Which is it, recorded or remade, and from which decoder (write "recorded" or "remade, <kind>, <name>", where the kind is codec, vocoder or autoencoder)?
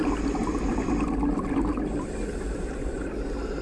recorded